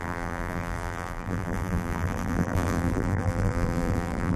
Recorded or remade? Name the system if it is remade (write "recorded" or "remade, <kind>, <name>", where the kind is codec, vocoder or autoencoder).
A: remade, vocoder, BigVGAN v2